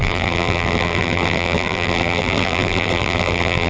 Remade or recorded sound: remade